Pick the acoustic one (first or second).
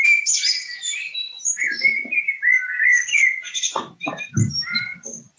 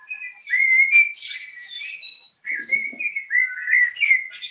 second